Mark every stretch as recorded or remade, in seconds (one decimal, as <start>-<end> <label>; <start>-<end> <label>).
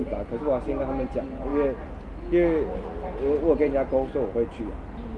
0.0-5.2 recorded